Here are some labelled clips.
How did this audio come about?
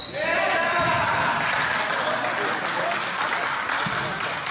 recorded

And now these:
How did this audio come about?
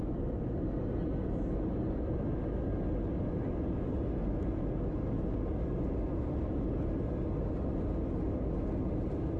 recorded